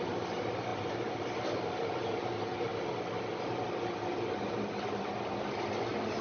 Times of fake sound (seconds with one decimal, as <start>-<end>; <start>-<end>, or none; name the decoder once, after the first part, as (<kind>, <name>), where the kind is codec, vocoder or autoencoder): none